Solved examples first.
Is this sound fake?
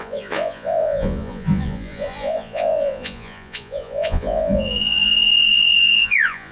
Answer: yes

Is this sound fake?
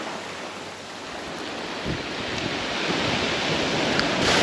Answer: no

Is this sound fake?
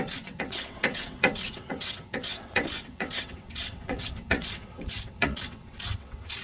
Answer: yes